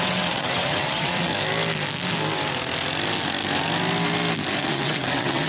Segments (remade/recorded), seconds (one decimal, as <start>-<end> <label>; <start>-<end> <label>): 0.0-1.3 remade; 1.3-4.6 recorded; 4.6-5.5 remade